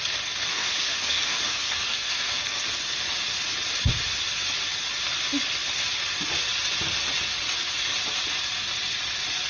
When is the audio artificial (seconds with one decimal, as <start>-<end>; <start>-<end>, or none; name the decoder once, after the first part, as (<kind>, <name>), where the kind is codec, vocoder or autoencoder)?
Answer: 0.5-2.6 (codec, SNAC)